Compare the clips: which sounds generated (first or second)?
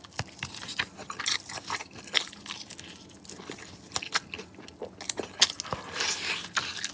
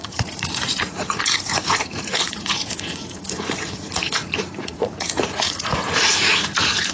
second